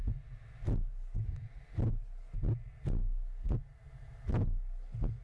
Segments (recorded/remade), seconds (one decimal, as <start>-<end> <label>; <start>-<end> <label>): 0.0-5.2 recorded